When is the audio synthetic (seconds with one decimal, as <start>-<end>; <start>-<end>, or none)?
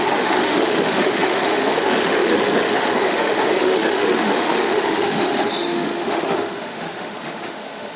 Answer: 0.0-8.0